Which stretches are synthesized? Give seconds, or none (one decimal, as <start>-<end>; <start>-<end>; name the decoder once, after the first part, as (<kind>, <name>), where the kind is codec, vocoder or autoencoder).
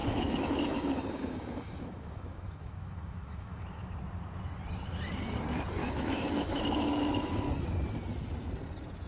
0.0-3.9 (autoencoder, DAC-VAE); 5.8-7.4